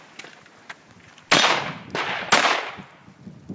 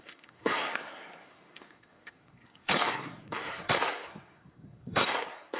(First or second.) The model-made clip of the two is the second